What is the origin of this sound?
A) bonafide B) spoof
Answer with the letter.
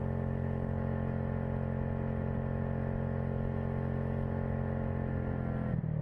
A